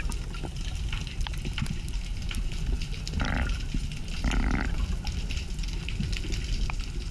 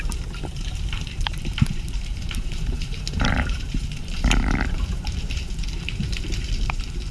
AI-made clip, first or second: second